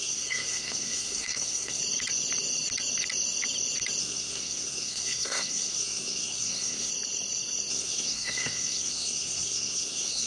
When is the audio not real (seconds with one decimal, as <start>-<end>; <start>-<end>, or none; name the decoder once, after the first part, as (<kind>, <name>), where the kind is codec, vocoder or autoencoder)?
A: 0.0-1.8 (codec, SNAC); 4.0-6.9; 7.7-10.3